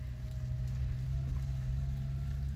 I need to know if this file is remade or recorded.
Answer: recorded